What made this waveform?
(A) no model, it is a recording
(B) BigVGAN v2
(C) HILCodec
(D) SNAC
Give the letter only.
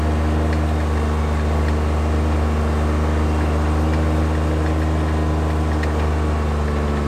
A